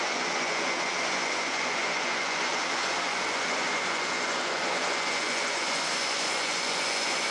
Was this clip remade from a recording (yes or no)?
yes